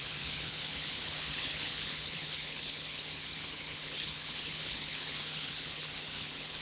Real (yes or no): no